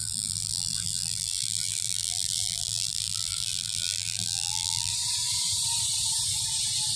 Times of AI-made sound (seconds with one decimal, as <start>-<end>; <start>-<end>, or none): 0.0-4.9